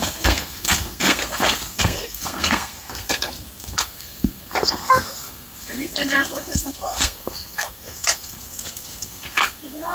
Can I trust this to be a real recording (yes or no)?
no